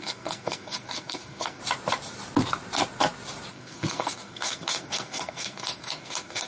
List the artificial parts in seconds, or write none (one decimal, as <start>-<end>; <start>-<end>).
0.0-1.6; 3.5-6.5